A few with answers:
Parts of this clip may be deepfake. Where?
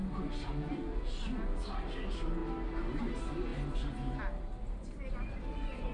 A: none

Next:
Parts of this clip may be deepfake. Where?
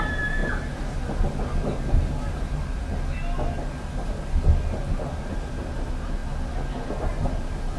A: none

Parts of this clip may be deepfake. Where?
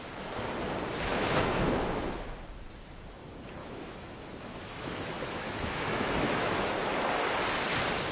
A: 1.1-2.4; 3.6-6.7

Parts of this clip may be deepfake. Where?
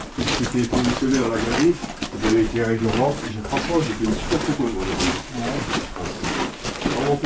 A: none